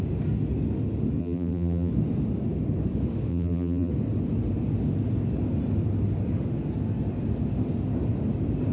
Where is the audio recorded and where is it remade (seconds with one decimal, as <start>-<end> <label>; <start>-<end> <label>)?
0.0-1.2 recorded; 1.2-1.9 remade; 1.9-3.3 recorded; 3.3-3.9 remade; 3.9-8.7 recorded